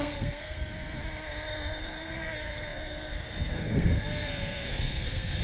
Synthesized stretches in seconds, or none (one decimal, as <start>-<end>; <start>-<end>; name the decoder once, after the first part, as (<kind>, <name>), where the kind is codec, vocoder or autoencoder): 0.0-0.7 (codec, SNAC); 1.8-5.4